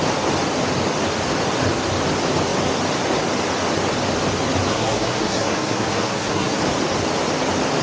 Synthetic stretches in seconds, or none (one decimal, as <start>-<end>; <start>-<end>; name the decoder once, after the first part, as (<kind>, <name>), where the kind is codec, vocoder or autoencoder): 4.7-6.6 (codec, SNAC)